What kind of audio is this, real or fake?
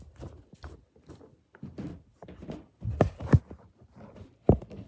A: real